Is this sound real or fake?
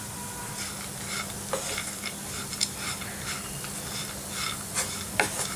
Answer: real